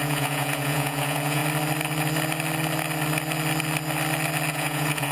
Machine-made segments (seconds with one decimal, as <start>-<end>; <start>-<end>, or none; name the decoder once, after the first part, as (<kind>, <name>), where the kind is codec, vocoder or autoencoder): 0.0-1.4 (vocoder, Vocos); 4.5-5.1